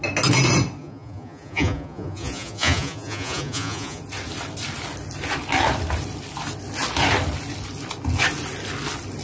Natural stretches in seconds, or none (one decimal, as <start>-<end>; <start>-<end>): 0.0-0.8; 4.0-9.2